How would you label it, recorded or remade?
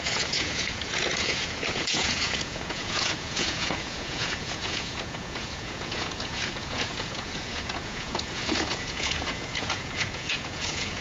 remade